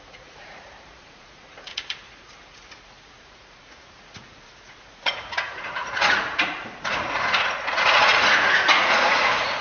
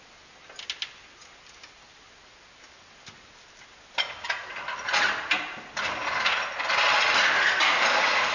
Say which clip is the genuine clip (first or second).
second